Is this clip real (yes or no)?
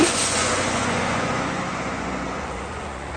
no